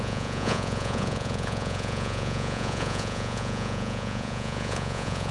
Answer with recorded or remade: remade